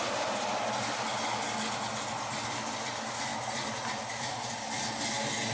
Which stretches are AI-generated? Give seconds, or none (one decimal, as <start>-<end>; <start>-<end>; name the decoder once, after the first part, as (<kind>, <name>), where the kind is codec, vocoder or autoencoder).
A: none